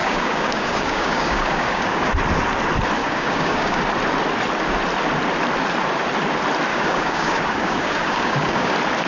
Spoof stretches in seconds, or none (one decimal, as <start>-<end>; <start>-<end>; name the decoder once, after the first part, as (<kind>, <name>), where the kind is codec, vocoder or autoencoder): 0.0-2.1 (codec, DAC); 3.0-3.8; 6.7-8.7